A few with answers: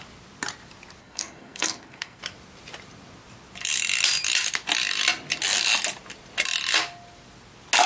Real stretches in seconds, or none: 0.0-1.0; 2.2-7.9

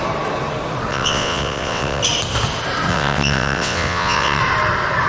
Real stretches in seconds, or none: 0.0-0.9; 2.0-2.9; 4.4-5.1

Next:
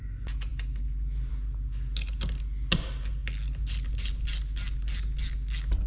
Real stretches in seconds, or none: 0.0-5.9

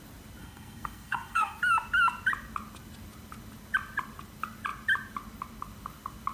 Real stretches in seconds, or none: 0.0-0.4; 1.6-6.3